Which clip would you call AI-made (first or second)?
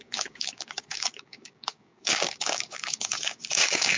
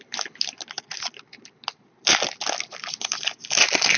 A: first